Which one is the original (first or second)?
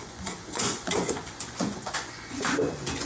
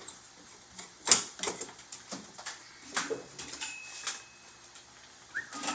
second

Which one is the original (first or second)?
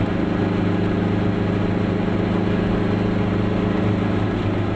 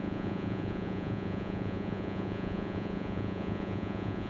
first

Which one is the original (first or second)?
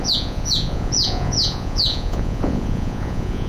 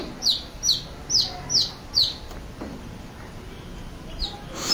second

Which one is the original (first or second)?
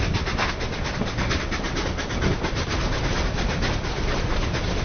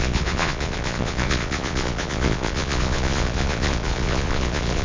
first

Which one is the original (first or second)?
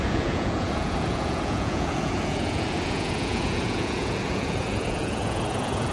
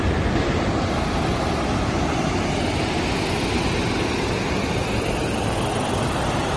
second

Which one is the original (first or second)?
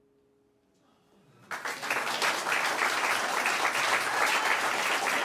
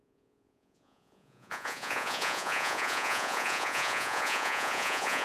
first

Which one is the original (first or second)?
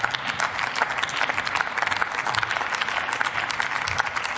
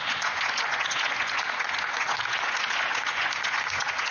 first